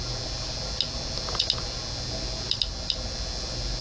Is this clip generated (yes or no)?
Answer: no